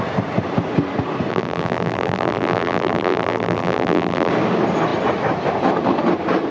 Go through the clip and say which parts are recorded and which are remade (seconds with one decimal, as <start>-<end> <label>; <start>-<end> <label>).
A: 0.0-1.3 recorded; 1.3-4.3 remade; 4.3-6.5 recorded